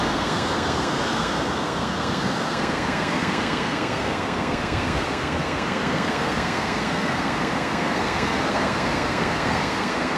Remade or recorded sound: remade